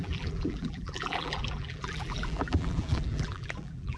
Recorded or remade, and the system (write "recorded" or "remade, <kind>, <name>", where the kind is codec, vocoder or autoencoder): remade, vocoder, BigVGAN v2